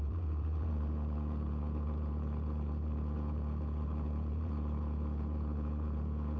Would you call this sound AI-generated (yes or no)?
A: yes